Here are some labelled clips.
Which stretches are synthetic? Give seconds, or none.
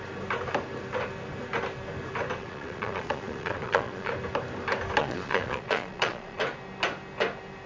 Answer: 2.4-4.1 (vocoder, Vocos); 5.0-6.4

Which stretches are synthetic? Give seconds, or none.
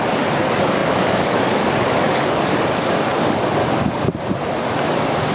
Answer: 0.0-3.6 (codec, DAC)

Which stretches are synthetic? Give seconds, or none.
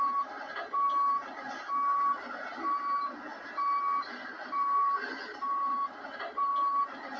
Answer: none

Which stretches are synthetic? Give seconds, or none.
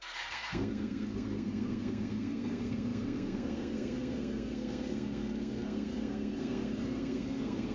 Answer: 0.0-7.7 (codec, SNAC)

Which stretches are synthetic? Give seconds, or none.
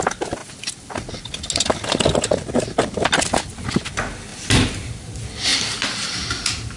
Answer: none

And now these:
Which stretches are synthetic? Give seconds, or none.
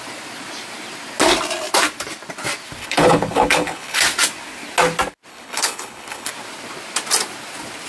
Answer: 2.8-4.0 (codec, HILCodec); 5.3-6.3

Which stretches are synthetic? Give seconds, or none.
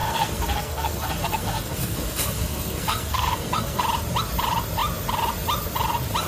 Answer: 0.0-3.8 (codec, SNAC)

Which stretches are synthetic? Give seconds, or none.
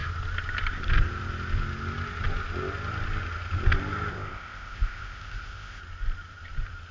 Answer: 4.1-5.8 (codec, ZipCodec)